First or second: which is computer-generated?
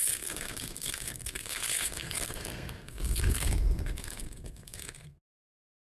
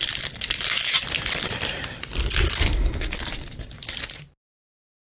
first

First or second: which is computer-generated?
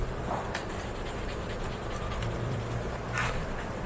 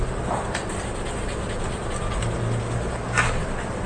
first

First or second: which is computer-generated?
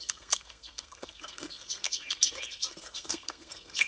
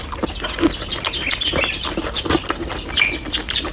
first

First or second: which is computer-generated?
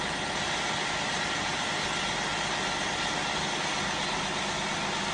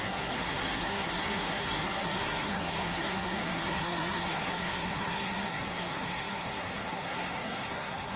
second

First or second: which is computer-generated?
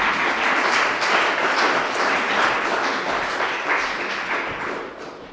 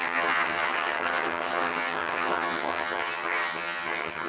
second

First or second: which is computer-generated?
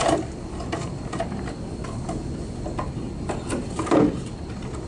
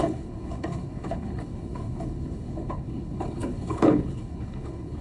second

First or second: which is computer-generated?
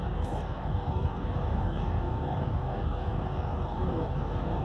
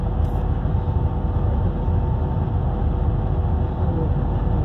first